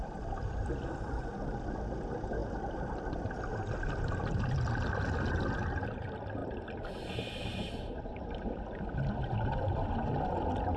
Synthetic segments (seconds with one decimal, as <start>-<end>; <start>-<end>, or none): 7.5-8.6